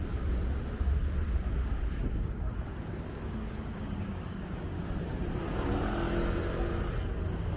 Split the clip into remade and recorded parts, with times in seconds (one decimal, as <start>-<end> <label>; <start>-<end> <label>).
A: 0.0-1.6 recorded; 1.6-4.8 remade; 4.8-7.6 recorded